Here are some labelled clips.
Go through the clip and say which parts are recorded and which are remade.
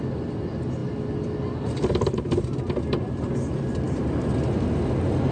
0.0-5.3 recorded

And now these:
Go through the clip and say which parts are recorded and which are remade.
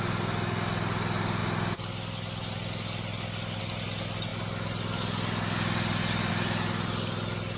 0.0-7.6 recorded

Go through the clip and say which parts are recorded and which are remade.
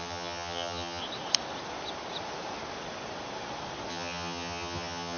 0.0-1.0 remade; 1.0-3.9 recorded; 3.9-5.2 remade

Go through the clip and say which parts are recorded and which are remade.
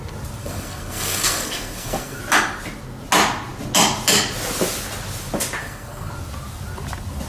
0.0-0.4 recorded; 0.4-2.2 remade; 2.2-5.6 recorded; 5.6-6.1 remade; 6.1-7.3 recorded